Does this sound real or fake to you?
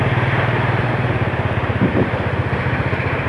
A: fake